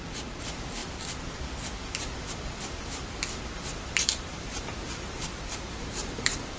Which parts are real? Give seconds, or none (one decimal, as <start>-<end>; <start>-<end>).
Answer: 0.8-3.5